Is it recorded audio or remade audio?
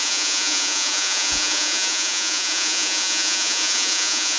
remade